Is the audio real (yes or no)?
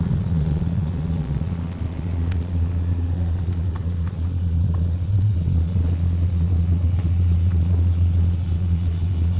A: no